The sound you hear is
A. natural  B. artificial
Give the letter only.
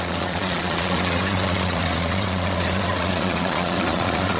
B